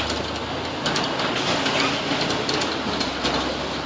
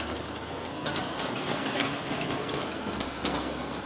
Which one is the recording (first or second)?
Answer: first